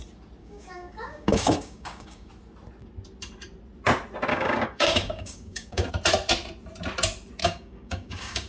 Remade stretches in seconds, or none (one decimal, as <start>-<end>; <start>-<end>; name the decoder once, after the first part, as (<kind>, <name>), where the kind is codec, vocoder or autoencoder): 0.4-2.3 (codec, DAC); 4.3-5.9; 7.4-8.5